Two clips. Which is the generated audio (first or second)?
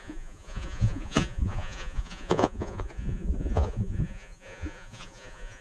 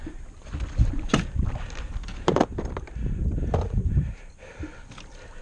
first